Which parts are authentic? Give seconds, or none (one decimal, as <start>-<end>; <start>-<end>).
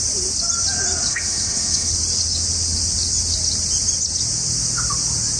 0.0-1.1; 1.9-5.4